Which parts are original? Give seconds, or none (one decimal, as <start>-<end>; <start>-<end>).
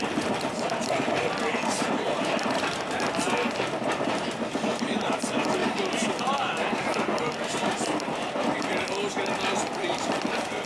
0.0-10.7